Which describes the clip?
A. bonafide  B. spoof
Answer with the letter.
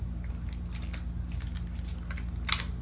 A